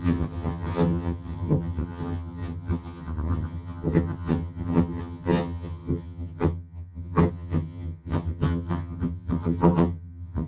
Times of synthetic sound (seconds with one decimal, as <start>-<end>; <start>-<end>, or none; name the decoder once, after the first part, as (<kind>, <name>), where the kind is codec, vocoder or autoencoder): 0.0-10.5 (vocoder, HiFi-GAN)